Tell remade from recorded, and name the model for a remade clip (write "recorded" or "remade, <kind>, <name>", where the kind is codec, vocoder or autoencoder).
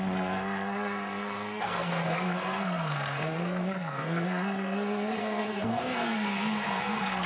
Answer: remade, codec, SNAC